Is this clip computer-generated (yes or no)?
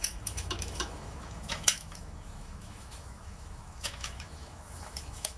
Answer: yes